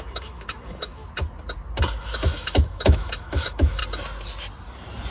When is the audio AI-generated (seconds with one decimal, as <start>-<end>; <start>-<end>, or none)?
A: 0.0-1.0; 2.0-3.8